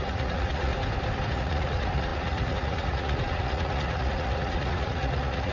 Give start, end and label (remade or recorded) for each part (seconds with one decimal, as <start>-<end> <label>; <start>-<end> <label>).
0.0-0.7 remade; 0.7-1.3 recorded; 1.3-5.5 remade